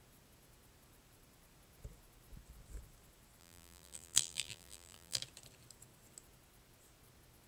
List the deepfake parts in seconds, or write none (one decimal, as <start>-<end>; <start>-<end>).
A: 3.4-5.2